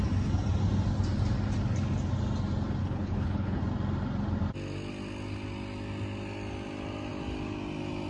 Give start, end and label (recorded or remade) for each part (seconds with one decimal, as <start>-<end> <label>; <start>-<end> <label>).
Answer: 0.0-2.8 recorded; 2.8-3.6 remade; 3.6-8.1 recorded